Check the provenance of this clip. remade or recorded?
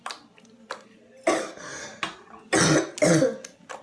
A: recorded